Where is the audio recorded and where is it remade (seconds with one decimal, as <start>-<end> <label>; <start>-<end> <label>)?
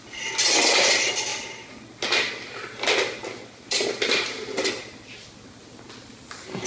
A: 0.0-6.7 recorded